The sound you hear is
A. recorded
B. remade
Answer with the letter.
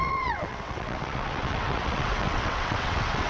B